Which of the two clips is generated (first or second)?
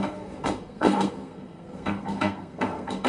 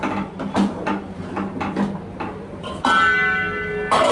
first